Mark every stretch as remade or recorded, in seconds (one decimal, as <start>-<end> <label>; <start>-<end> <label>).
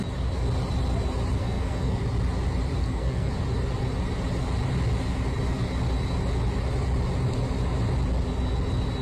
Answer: 0.0-1.4 recorded; 1.4-2.0 remade; 2.0-2.8 recorded; 2.8-3.3 remade; 3.3-9.0 recorded